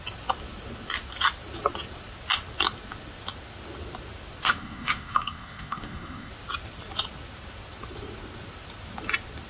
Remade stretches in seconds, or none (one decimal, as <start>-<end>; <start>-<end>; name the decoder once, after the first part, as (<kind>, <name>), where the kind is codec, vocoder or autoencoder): 4.5-6.3 (codec, SNAC)